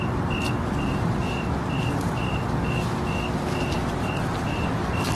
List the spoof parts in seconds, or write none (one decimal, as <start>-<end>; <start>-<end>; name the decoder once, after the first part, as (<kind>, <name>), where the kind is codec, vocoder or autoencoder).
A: none